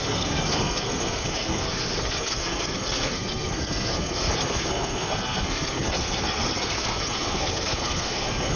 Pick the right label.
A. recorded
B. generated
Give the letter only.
B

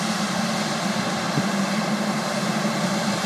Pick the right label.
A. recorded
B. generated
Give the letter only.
A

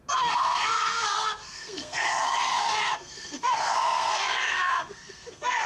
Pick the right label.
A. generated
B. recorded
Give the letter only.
A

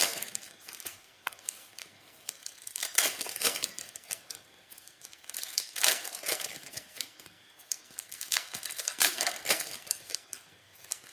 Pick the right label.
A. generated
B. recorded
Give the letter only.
A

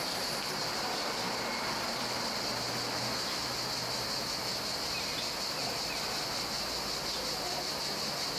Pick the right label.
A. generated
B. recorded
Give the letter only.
B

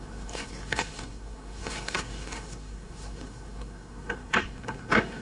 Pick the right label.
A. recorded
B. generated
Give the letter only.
B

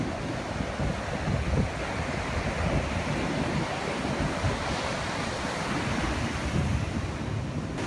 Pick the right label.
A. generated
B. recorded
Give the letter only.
B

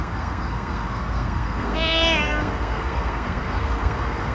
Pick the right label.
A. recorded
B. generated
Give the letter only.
B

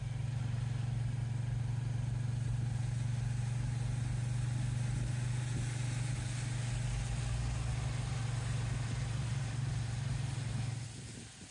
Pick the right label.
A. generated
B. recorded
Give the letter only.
B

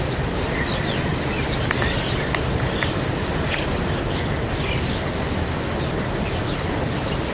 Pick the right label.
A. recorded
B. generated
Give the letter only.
A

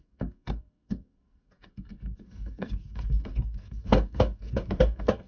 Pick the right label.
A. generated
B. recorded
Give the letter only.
A